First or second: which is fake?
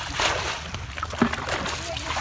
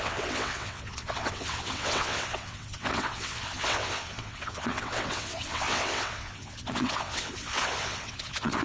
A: second